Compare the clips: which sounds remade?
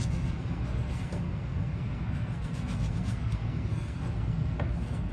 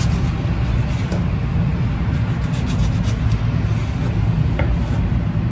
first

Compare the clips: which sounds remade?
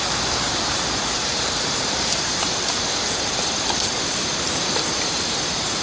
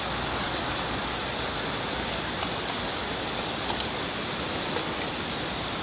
first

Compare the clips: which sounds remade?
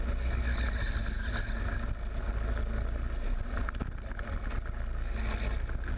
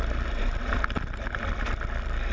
second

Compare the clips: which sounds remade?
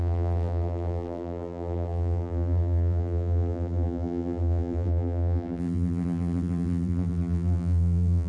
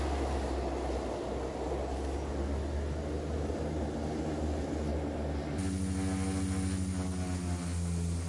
first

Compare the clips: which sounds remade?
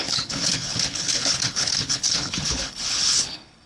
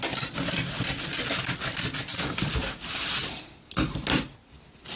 first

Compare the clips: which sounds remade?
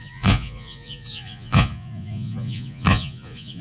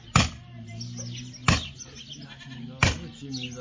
first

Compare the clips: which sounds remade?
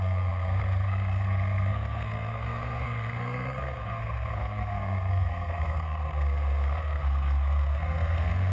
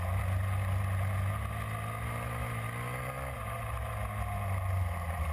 first